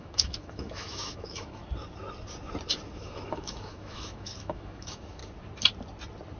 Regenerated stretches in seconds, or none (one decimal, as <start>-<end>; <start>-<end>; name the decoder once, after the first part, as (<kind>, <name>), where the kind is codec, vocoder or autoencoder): 0.0-1.6 (autoencoder, DAC-VAE); 2.9-5.2